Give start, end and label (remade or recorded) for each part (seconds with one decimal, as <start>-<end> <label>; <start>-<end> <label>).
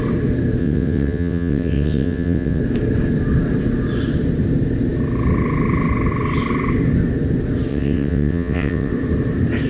0.0-0.6 recorded; 0.6-2.6 remade; 2.6-7.7 recorded; 7.7-8.9 remade; 8.9-9.7 recorded